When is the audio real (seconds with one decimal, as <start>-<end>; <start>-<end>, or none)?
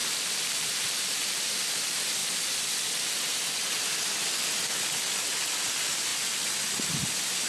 2.2-5.4